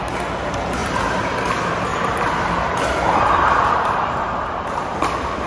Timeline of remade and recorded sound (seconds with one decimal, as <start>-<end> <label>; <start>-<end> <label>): 0.0-0.8 recorded; 0.8-1.5 remade; 1.5-1.9 recorded; 1.9-5.5 remade